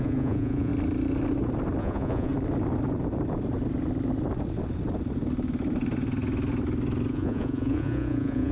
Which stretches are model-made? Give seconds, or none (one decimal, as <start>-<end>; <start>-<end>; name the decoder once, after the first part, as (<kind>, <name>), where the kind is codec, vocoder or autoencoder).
0.0-0.7 (vocoder, Vocos); 1.8-2.3; 7.1-8.5